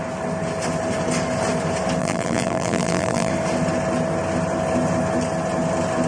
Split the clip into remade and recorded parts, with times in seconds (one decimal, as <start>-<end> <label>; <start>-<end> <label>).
0.0-2.0 recorded; 2.0-3.3 remade; 3.3-6.1 recorded

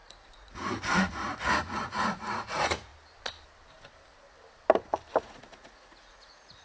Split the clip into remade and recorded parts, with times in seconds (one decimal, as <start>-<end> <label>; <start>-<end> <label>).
0.0-2.9 remade; 2.9-5.2 recorded; 5.2-6.6 remade

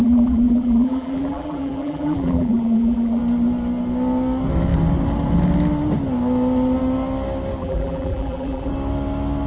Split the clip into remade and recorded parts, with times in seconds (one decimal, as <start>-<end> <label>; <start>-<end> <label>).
0.0-3.2 remade; 3.2-7.6 recorded; 7.6-8.7 remade; 8.7-9.5 recorded

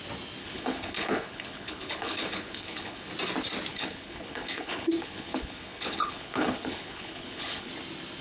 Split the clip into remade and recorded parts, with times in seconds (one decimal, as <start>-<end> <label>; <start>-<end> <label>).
0.0-0.4 recorded; 0.4-3.1 remade; 3.1-3.7 recorded; 3.7-7.7 remade; 7.7-8.2 recorded

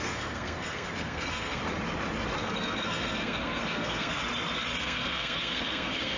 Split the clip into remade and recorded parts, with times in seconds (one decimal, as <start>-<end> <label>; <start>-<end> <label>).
0.0-1.6 remade; 1.6-2.4 recorded; 2.4-4.2 remade; 4.2-4.8 recorded; 4.8-6.2 remade

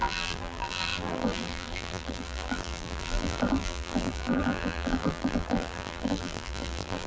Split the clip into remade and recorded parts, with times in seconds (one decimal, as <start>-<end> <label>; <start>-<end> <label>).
0.0-7.1 remade

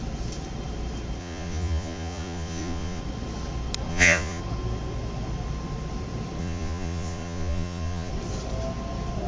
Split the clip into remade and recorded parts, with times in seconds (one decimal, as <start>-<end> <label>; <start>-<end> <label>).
0.0-1.2 recorded; 1.2-3.0 remade; 3.0-3.9 recorded; 3.9-4.4 remade; 4.4-6.4 recorded; 6.4-8.1 remade; 8.1-9.3 recorded